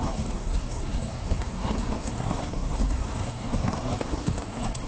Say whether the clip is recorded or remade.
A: remade